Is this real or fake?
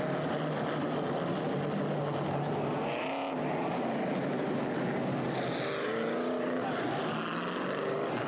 real